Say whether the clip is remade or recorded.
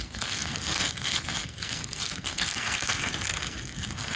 remade